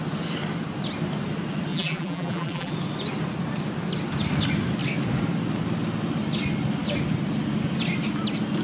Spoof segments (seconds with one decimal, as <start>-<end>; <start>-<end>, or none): 1.7-2.7